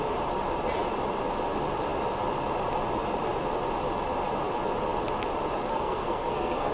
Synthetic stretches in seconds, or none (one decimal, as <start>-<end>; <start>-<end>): 5.7-6.7